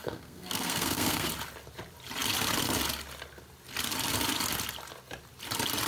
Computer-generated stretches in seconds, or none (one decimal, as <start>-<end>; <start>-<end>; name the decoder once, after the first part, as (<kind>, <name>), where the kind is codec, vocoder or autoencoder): 0.0-1.3 (codec, SNAC)